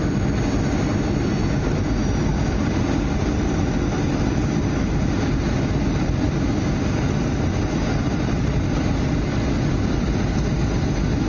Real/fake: real